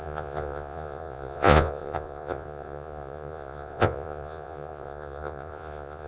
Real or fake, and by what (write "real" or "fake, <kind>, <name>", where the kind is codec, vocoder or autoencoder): fake, vocoder, Vocos